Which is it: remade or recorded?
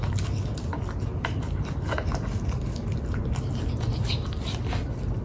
recorded